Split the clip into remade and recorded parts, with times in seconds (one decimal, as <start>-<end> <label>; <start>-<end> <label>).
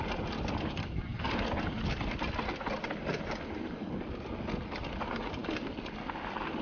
0.0-6.6 recorded